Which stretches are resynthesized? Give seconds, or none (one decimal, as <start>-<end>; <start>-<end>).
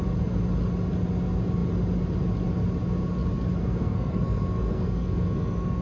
3.6-5.8